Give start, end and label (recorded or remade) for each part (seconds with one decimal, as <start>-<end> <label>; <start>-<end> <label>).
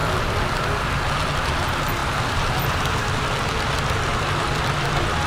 0.0-0.6 remade; 0.6-2.0 recorded; 2.0-3.4 remade; 3.4-5.3 recorded